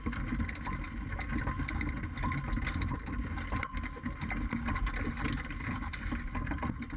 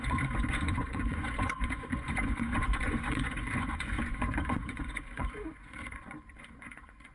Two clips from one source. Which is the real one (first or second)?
first